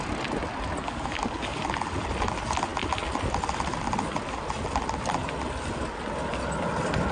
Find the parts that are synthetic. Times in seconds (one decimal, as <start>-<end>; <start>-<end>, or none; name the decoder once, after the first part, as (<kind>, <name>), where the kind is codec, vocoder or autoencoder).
0.8-1.6 (codec, DAC)